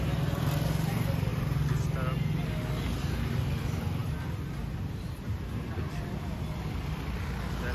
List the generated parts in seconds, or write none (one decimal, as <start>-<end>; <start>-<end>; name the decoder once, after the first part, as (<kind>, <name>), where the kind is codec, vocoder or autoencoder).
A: none